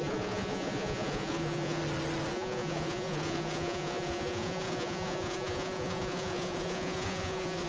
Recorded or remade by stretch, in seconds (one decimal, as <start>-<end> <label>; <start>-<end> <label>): 0.0-1.8 remade; 1.8-2.3 recorded; 2.3-7.7 remade